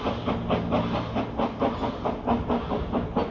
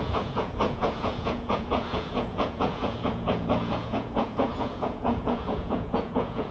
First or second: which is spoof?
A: second